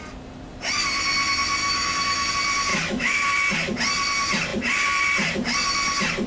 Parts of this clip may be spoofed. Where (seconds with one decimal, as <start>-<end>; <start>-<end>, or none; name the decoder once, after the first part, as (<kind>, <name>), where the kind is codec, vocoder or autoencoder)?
1.6-2.3 (autoencoder, DAC-VAE); 2.7-3.3